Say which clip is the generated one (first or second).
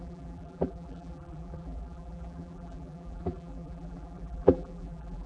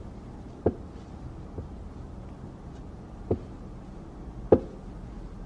first